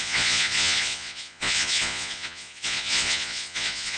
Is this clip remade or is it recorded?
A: remade